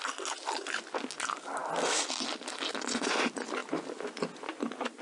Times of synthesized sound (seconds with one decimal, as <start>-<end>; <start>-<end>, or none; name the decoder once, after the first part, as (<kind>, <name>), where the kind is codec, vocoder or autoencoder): none